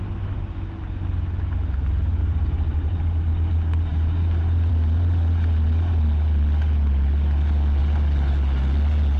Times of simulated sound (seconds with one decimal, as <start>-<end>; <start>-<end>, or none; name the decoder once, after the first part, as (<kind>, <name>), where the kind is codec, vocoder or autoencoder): 2.2-3.0 (vocoder, BigVGAN v2)